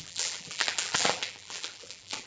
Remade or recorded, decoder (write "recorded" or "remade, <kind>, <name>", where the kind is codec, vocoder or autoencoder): remade, vocoder, BigVGAN v2